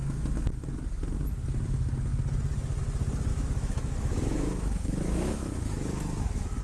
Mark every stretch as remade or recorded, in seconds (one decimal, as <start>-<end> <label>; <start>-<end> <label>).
0.0-0.7 remade; 0.7-3.3 recorded; 3.3-6.6 remade